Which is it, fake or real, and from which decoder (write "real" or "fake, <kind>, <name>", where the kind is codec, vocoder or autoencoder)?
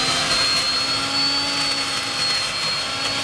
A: real